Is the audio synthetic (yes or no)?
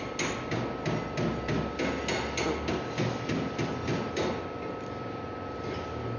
no